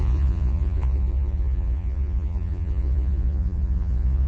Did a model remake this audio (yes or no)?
yes